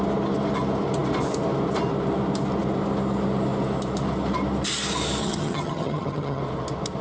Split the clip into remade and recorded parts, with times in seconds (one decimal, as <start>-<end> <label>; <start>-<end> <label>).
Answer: 0.0-5.2 recorded; 5.2-6.4 remade; 6.4-7.0 recorded